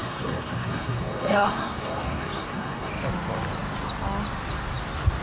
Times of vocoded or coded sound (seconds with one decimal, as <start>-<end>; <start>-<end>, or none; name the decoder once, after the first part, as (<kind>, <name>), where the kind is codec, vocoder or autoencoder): 0.0-2.9 (codec, SNAC)